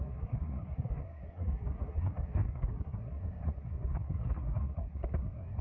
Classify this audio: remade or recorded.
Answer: remade